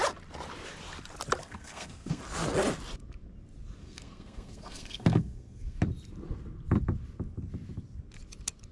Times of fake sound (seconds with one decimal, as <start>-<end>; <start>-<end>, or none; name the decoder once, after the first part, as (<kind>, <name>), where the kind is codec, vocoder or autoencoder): 1.4-2.2 (codec, SNAC); 3.8-5.8